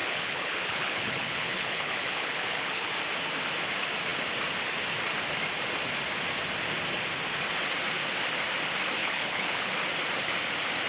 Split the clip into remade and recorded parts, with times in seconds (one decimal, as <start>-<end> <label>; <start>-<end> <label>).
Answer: 0.0-2.9 remade; 2.9-9.0 recorded; 9.0-9.7 remade; 9.7-10.9 recorded